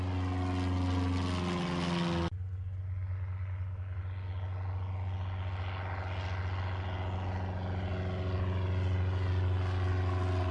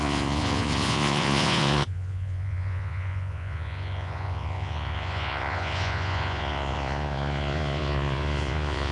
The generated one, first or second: second